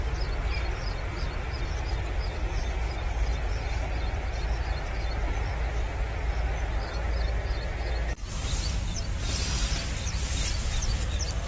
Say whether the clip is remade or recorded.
recorded